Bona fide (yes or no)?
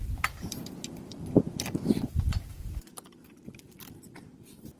no